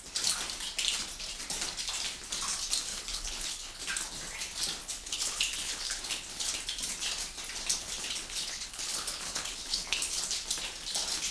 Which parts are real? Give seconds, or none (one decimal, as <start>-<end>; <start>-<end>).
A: 0.0-2.9; 3.8-4.8; 6.5-7.8; 10.2-11.3